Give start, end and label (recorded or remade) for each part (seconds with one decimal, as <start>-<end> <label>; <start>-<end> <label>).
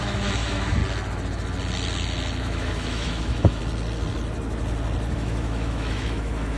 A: 0.0-0.8 remade; 0.8-2.4 recorded; 2.4-3.6 remade; 3.6-5.1 recorded; 5.1-6.6 remade